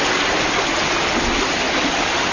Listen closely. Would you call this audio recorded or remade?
recorded